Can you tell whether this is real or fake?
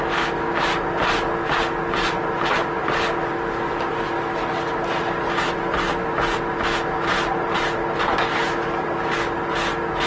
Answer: real